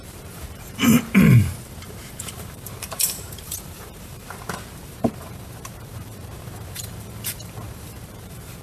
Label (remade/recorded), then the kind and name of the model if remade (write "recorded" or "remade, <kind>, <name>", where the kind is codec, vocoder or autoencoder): remade, vocoder, BigVGAN v2